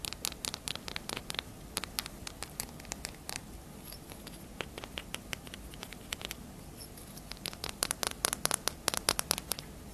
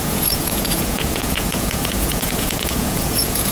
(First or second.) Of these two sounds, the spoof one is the second